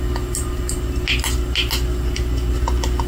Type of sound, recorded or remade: recorded